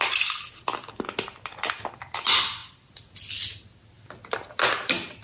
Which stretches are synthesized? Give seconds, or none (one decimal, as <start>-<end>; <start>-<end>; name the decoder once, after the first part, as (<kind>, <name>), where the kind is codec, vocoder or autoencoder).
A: none